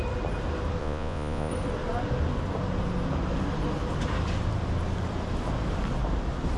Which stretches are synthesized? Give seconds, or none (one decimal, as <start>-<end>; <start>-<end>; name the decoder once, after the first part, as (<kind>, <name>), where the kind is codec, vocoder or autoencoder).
0.8-1.5 (vocoder, Vocos)